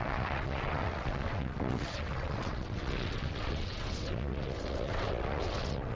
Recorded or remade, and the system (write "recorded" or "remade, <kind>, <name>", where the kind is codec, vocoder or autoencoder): remade, vocoder, WaveNeXt